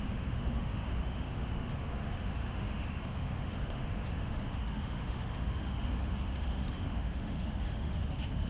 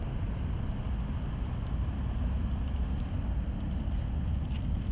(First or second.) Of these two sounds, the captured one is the second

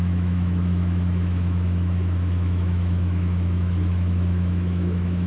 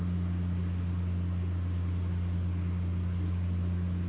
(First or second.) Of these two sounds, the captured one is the second